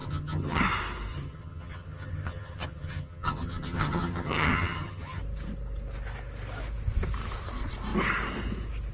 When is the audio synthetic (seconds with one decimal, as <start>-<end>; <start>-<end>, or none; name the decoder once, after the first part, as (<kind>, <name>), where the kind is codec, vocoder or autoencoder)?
0.0-0.6 (vocoder, HiFi-GAN); 1.1-5.2